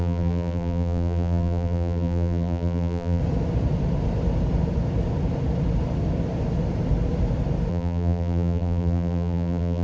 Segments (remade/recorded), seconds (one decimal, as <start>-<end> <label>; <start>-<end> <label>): 0.0-3.2 remade; 3.2-7.7 recorded; 7.7-9.8 remade